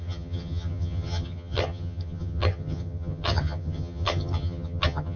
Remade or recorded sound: remade